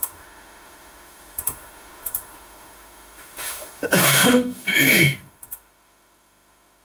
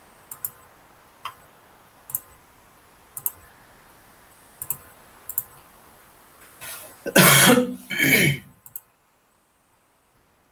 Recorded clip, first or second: second